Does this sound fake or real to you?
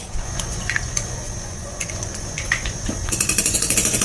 fake